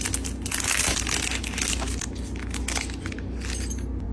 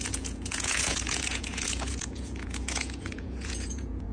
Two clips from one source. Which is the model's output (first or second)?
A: second